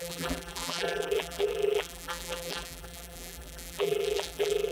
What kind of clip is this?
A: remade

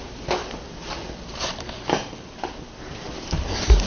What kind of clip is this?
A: recorded